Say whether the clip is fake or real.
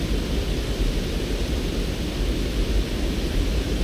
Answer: real